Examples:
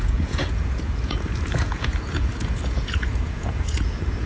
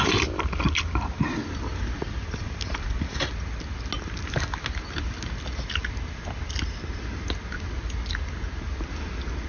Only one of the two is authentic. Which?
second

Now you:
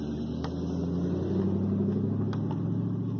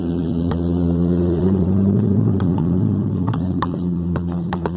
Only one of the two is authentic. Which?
first